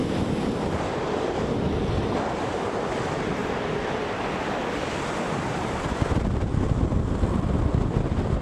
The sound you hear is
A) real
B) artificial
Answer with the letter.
A